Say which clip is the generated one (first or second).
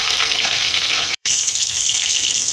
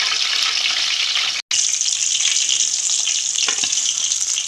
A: first